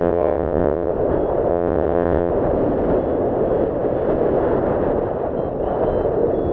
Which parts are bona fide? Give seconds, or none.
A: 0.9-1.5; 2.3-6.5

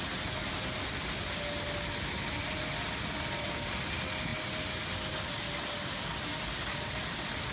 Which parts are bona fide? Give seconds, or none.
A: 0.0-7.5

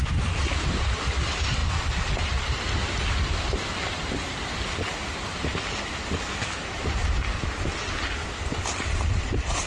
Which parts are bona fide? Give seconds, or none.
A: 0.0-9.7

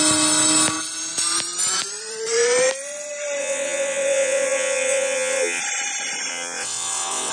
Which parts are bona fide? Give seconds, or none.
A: 0.0-3.4; 5.6-6.3